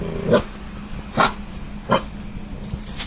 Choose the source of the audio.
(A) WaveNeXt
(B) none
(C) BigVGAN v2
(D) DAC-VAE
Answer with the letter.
B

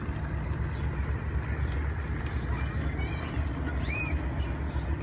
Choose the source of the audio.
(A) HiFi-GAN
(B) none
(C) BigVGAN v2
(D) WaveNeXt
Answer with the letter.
B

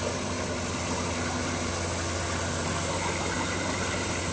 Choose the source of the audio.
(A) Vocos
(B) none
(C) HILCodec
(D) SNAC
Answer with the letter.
B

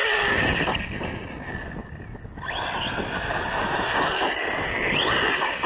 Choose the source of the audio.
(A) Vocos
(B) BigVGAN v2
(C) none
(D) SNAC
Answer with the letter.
C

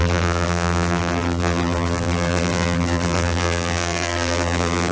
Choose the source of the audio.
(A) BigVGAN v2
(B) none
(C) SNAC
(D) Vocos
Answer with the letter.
A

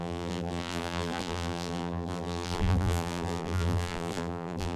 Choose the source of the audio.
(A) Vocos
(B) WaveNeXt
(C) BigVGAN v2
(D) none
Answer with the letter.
C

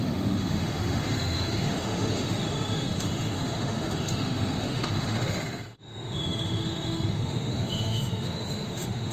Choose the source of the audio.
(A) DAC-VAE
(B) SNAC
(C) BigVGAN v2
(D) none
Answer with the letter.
A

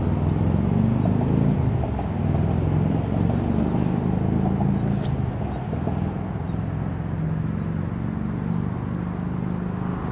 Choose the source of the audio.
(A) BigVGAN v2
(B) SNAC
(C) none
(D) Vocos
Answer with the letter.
C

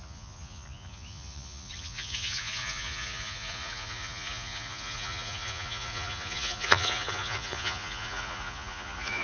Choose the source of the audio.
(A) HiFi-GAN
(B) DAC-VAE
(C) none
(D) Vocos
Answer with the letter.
D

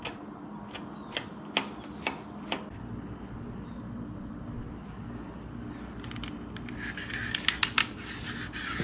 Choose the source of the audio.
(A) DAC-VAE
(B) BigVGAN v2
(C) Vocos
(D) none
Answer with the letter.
D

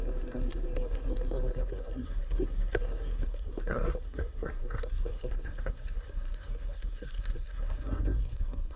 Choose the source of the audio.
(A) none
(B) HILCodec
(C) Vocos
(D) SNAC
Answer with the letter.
D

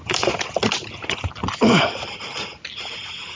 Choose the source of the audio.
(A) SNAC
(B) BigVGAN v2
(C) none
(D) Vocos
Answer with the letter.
C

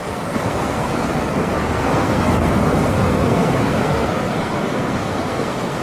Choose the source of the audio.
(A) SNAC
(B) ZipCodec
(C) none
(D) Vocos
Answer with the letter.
A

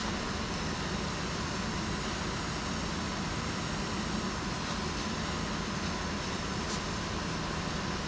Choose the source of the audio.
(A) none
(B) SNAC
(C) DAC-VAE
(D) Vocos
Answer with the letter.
A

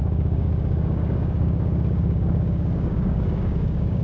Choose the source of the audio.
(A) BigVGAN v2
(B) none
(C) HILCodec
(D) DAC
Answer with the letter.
D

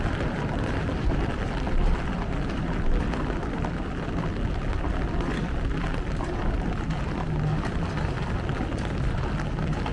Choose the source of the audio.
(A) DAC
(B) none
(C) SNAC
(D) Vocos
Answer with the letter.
B